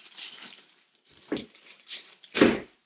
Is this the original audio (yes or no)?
no